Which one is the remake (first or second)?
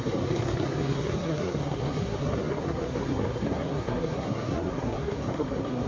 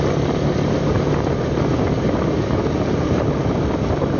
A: first